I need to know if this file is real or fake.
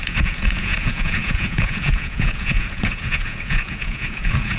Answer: fake